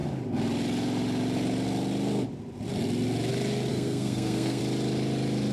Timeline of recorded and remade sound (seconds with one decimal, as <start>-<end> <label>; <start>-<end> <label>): 0.0-3.7 recorded; 3.7-4.6 remade; 4.6-5.5 recorded